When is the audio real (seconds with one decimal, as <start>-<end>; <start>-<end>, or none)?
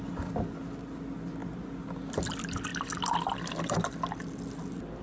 0.0-5.0